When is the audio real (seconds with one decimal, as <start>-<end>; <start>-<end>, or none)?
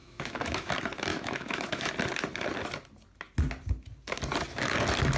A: 0.7-1.1; 1.9-5.2